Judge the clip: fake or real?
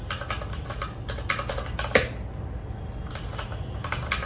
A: real